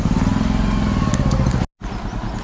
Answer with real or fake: real